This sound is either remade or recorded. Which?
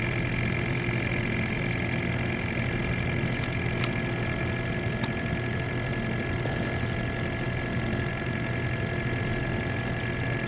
recorded